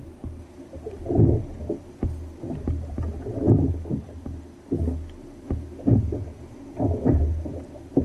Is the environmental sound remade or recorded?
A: recorded